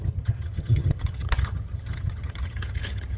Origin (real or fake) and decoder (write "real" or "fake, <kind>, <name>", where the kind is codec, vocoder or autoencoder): fake, vocoder, HiFi-GAN